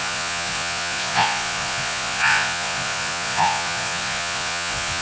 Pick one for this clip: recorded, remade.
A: remade